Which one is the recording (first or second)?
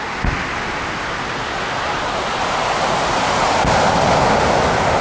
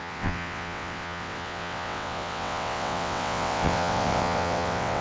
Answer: first